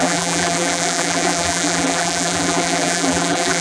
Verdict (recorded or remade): remade